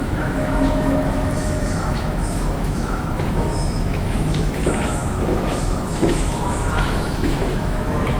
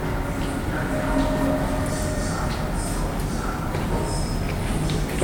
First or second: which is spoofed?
first